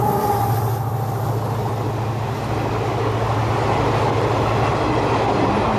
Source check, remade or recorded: recorded